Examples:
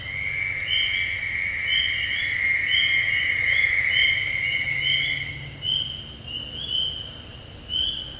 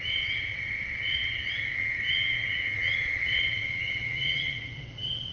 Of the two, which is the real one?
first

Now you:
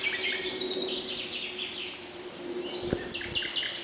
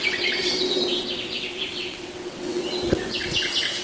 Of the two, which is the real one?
first